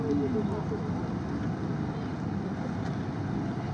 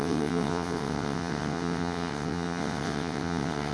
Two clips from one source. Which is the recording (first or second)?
first